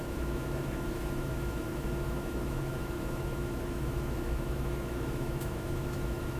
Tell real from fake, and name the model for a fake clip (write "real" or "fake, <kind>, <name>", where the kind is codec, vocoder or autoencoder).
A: fake, autoencoder, DAC-VAE